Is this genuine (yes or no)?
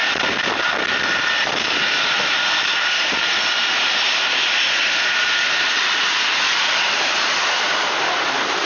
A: no